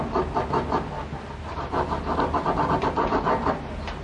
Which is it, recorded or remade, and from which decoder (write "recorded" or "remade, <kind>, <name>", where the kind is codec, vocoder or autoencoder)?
recorded